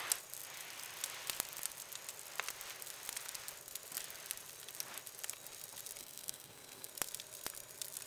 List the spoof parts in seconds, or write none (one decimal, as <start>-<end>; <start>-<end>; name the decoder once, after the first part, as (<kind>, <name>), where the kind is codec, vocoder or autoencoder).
6.0-6.9 (codec, SNAC)